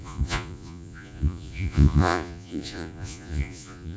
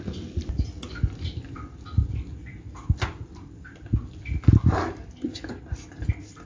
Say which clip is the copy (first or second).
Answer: first